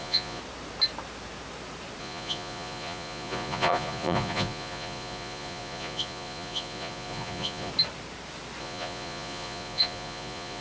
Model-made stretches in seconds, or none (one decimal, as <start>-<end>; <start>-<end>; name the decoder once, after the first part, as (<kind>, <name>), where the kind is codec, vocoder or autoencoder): 0.0-0.4 (vocoder, Vocos); 2.0-7.7; 8.6-10.6